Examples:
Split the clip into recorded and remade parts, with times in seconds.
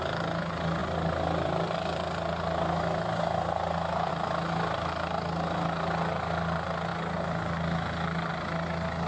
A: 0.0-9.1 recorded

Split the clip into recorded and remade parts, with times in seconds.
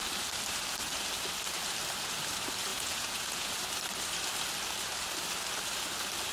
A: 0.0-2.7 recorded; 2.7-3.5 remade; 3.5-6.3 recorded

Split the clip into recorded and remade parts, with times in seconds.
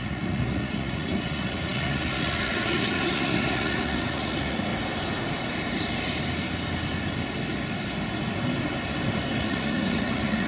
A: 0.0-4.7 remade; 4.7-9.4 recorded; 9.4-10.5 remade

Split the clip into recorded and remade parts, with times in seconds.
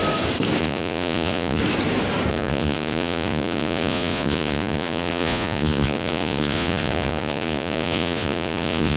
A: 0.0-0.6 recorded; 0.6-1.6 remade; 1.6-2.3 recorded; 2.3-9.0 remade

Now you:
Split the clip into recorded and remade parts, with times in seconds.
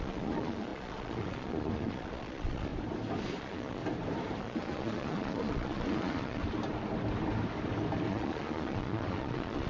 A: 0.0-2.7 remade; 2.7-3.4 recorded; 3.4-3.8 remade; 3.8-4.4 recorded; 4.4-6.4 remade; 6.4-8.1 recorded; 8.1-9.7 remade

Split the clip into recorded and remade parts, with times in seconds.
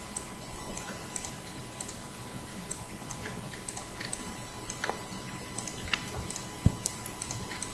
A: 0.0-1.1 remade; 1.1-2.5 recorded; 2.5-3.5 remade; 3.5-7.7 recorded